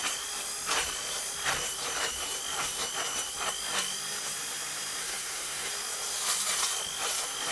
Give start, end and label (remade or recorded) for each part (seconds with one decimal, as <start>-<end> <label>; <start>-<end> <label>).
0.0-5.0 recorded; 5.0-5.7 remade; 5.7-7.5 recorded